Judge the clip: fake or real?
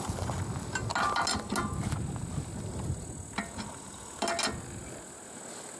real